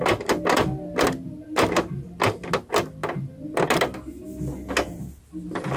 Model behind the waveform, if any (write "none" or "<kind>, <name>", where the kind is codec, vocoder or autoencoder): none